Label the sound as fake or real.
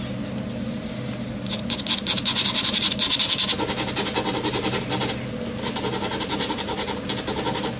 real